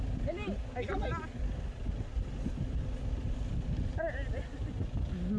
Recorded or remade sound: recorded